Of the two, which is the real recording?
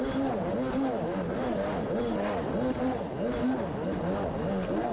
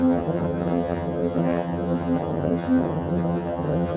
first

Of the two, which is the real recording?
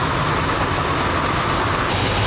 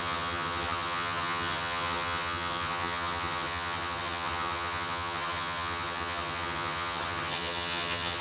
first